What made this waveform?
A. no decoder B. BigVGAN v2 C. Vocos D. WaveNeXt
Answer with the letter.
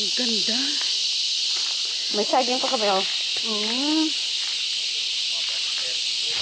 A